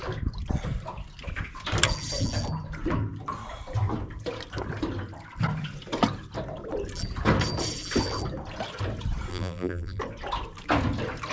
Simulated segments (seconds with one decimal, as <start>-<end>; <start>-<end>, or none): 9.3-10.0